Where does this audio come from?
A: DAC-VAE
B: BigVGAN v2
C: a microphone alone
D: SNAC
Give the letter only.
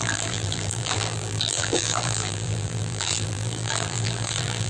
B